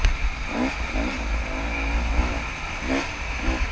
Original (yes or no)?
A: yes